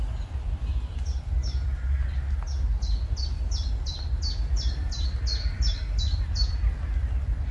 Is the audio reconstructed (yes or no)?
no